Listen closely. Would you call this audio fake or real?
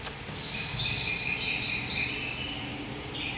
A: real